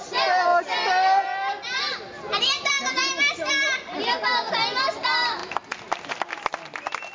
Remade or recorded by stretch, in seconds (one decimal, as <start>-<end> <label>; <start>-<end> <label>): 0.0-7.1 recorded